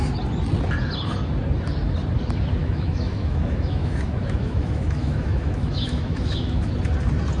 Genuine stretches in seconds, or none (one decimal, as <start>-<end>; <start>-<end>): 0.0-2.6; 6.7-7.4